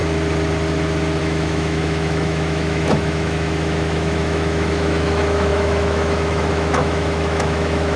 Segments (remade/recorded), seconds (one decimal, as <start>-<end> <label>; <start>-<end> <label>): 0.0-1.2 recorded; 1.2-8.0 remade